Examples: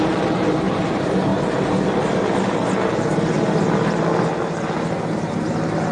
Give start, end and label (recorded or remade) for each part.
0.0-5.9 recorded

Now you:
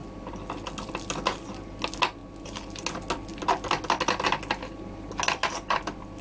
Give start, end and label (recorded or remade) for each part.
0.0-6.2 recorded

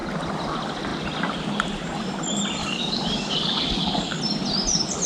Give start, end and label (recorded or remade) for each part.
0.0-2.6 recorded; 2.6-4.2 remade; 4.2-5.1 recorded

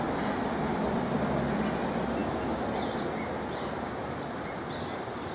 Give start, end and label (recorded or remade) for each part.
0.0-5.3 recorded

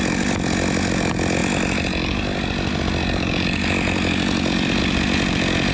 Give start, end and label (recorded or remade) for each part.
0.0-5.7 recorded

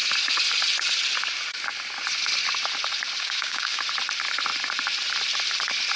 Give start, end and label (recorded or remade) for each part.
0.0-3.2 recorded; 3.2-3.8 remade; 3.8-6.0 recorded

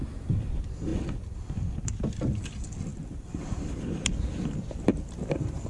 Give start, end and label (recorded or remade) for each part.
0.0-5.7 recorded